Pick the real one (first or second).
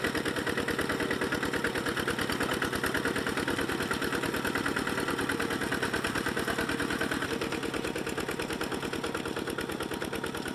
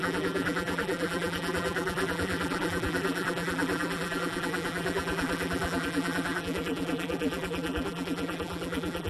first